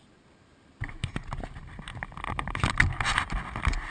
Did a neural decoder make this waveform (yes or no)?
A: no